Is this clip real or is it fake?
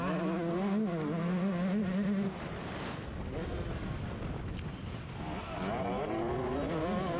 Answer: real